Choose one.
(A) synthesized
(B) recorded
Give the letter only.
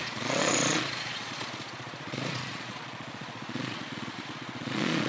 A